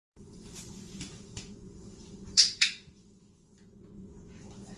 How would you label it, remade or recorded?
remade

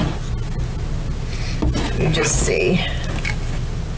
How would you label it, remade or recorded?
recorded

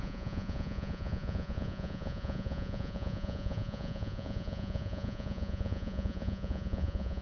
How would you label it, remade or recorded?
remade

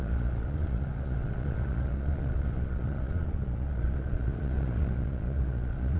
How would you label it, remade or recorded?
remade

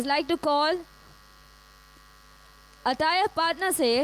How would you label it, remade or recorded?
recorded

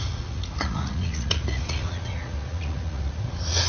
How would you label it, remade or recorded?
remade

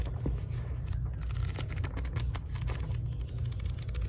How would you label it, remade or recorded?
recorded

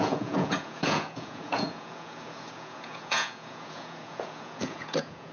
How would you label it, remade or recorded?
remade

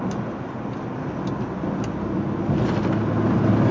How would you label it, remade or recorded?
recorded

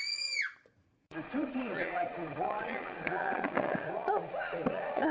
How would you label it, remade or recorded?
remade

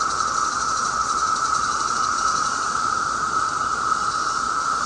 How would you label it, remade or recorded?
remade